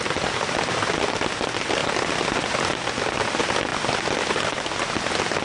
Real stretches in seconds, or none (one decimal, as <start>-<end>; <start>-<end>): 0.0-5.4